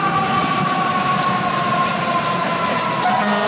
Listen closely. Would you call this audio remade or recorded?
recorded